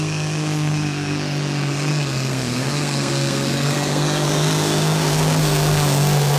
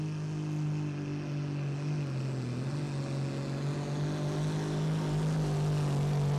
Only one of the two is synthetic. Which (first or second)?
first